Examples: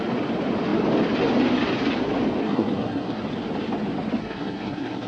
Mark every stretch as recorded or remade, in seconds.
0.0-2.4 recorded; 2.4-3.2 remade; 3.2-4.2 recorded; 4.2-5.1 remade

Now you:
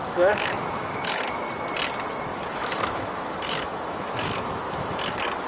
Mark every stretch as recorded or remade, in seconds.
0.0-1.5 remade; 1.5-2.3 recorded; 2.3-5.0 remade; 5.0-5.5 recorded

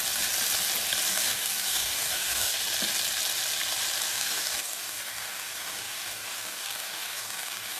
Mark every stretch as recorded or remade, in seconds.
0.0-1.1 recorded; 1.1-2.6 remade; 2.6-4.1 recorded; 4.1-7.8 remade

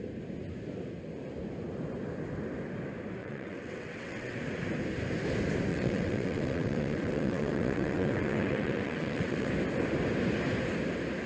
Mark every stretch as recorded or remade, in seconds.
0.0-3.2 recorded; 3.2-4.4 remade; 4.4-5.7 recorded; 5.7-9.5 remade; 9.5-11.3 recorded